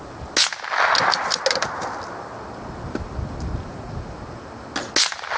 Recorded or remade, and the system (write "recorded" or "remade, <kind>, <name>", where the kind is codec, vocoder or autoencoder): recorded